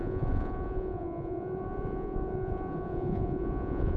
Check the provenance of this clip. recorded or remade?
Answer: remade